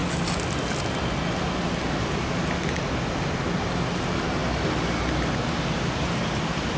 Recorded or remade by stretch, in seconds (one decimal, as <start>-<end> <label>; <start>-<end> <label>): 0.0-6.8 recorded